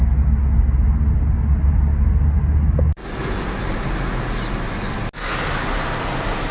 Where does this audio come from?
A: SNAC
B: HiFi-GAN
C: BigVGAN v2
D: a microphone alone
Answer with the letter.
D